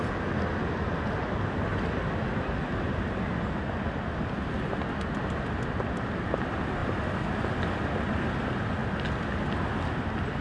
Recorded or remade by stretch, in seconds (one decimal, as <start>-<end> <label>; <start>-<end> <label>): 0.0-10.4 recorded